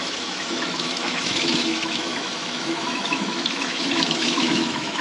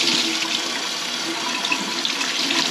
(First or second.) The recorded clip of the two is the second